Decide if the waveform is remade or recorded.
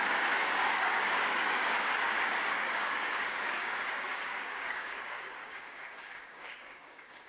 remade